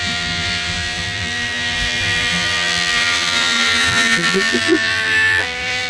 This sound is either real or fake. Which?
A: fake